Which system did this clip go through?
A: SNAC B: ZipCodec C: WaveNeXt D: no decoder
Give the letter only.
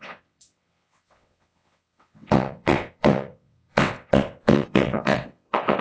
C